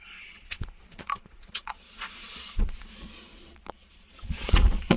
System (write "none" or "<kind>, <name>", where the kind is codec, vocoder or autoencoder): vocoder, Vocos